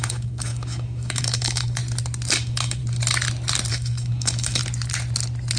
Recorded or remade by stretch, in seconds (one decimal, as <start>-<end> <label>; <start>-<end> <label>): 0.0-1.8 remade; 1.8-2.4 recorded; 2.4-2.8 remade; 2.8-3.7 recorded; 3.7-4.6 remade; 4.6-5.6 recorded